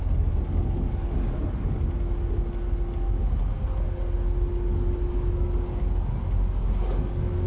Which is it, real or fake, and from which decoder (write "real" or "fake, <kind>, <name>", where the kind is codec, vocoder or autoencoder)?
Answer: real